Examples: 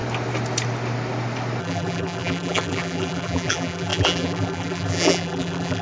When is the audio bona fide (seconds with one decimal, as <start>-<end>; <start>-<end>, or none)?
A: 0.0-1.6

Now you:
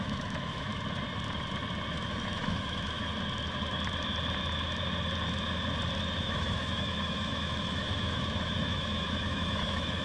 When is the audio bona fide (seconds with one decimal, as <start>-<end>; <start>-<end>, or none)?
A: 0.7-1.9; 3.1-6.2

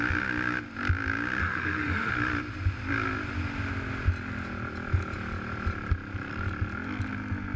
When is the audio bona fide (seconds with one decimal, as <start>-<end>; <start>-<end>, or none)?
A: 0.0-1.4; 2.1-7.6

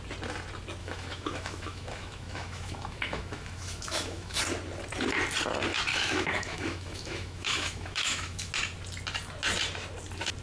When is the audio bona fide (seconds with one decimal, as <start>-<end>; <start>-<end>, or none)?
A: 0.0-0.8; 4.4-5.9; 8.5-10.4